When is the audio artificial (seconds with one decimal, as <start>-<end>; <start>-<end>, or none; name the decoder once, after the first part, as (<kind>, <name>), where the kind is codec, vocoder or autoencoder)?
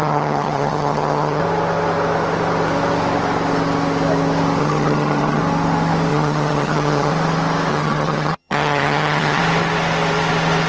0.0-1.4 (vocoder, HiFi-GAN); 4.6-5.4; 6.1-7.1; 7.7-9.4